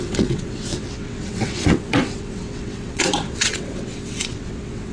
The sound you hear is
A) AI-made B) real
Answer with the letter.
A